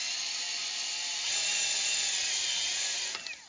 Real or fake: real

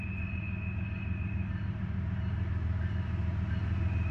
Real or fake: real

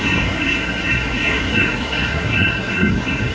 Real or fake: fake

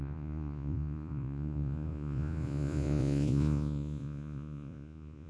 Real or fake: fake